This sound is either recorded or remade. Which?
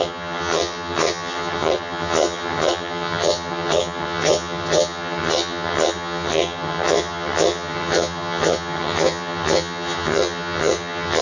remade